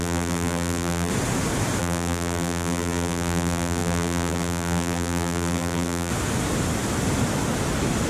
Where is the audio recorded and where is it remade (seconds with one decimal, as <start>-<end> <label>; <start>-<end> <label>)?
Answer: 0.0-1.1 remade; 1.1-1.8 recorded; 1.8-6.1 remade; 6.1-8.1 recorded